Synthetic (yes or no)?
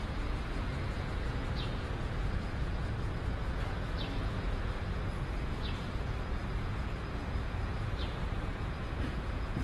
yes